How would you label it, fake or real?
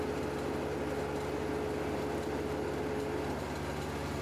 real